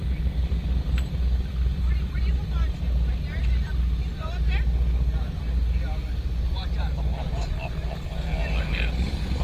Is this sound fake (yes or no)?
no